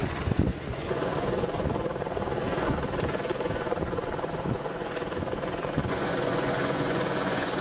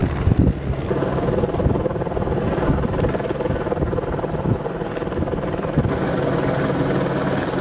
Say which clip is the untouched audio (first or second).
second